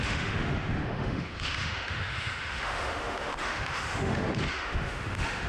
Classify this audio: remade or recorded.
remade